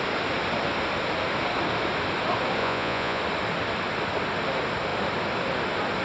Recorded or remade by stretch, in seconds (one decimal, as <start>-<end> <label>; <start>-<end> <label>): 0.0-2.6 recorded; 2.6-3.2 remade; 3.2-6.0 recorded